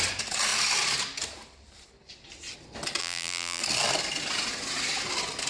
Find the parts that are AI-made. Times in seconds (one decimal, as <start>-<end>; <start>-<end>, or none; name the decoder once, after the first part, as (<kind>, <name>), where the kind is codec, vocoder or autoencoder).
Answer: 3.0-3.6 (vocoder, BigVGAN v2)